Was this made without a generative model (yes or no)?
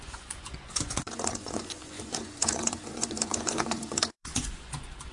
no